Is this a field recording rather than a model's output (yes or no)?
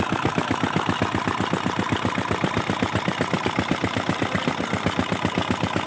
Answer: yes